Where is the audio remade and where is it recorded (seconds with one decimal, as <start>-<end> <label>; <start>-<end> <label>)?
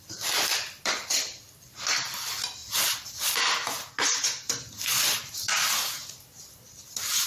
0.0-2.6 remade; 2.6-7.3 recorded